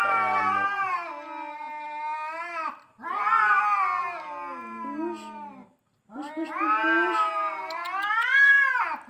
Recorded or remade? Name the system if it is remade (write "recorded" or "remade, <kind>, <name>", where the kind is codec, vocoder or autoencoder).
recorded